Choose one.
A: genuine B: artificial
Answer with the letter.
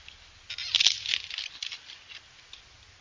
A